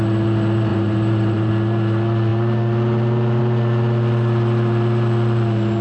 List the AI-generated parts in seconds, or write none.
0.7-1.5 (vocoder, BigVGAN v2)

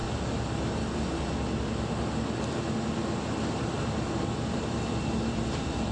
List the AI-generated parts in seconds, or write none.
3.5-5.9 (vocoder, BigVGAN v2)

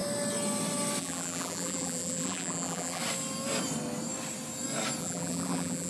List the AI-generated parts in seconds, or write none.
1.0-3.0 (vocoder, BigVGAN v2); 5.0-5.9

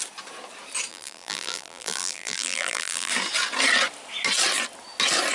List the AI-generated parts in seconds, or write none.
0.9-3.1 (vocoder, BigVGAN v2)

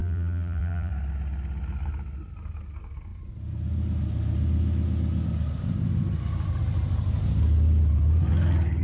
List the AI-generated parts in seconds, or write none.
0.0-0.9 (vocoder, BigVGAN v2)

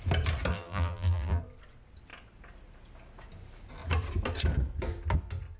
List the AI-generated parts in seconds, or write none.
0.5-1.4 (vocoder, BigVGAN v2)

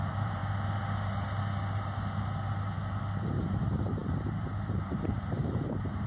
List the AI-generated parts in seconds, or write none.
0.0-0.4 (vocoder, BigVGAN v2); 3.3-6.1

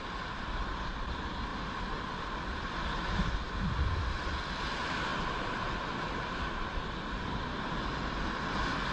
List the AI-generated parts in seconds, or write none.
5.1-6.8 (vocoder, BigVGAN v2)